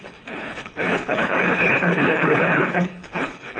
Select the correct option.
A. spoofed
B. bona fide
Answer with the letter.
A